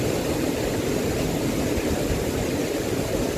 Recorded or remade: recorded